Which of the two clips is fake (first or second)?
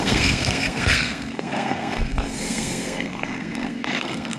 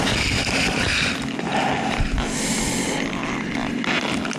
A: first